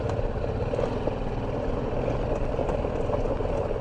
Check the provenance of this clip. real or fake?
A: real